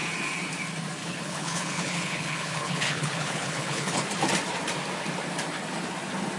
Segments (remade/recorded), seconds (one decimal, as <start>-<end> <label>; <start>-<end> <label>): 0.0-1.0 recorded; 1.0-4.0 remade; 4.0-6.4 recorded